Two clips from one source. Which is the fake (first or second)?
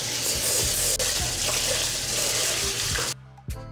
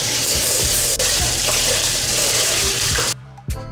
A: second